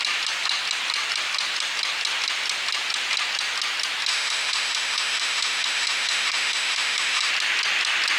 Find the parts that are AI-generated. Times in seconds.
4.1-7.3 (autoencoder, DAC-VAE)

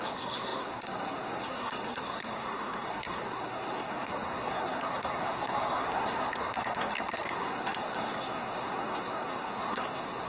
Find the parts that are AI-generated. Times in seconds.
0.0-10.3 (codec, SNAC)

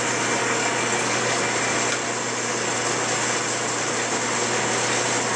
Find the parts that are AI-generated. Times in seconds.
0.4-1.4 (codec, DAC)

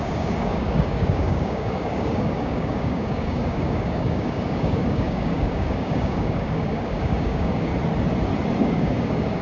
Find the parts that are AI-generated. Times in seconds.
0.0-7.7 (codec, DAC); 8.6-9.4

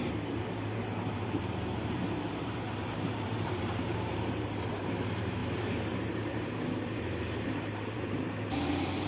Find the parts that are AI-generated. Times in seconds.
0.0-9.1 (vocoder, BigVGAN v2)

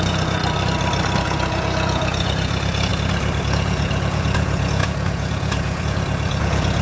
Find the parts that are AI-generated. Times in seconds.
0.0-0.4 (vocoder, Vocos); 1.2-2.9; 3.4-6.8

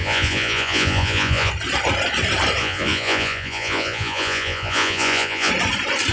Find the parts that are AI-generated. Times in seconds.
0.0-1.5 (vocoder, Vocos); 2.6-5.5